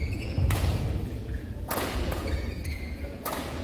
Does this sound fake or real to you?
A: fake